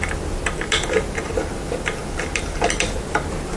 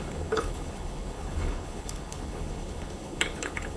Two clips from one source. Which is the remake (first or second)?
second